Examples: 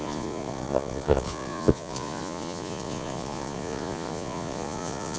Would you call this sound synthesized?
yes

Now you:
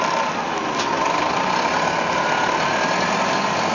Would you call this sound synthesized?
no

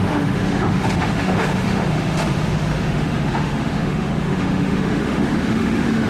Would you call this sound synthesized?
yes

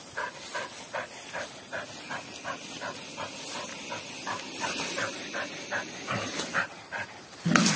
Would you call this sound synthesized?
no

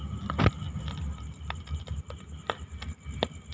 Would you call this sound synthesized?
no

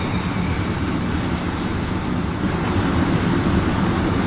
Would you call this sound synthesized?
yes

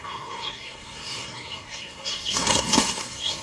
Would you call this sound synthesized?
yes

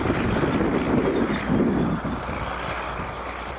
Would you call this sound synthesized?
no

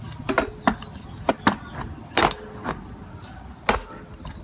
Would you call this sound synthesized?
no